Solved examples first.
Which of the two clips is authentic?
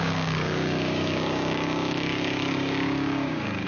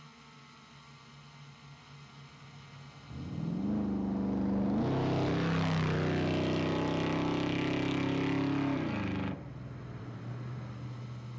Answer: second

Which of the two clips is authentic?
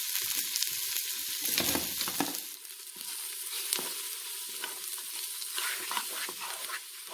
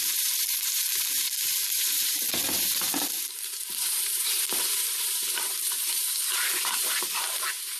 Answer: first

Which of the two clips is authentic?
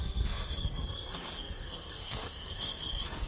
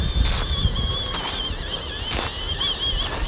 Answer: second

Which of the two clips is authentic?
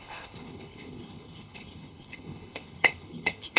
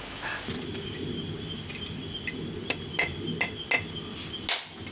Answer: second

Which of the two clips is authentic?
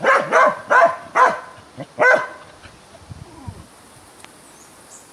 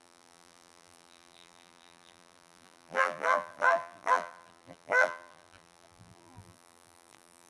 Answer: first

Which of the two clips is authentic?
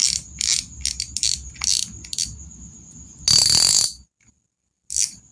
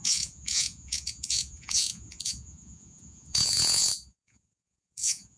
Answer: first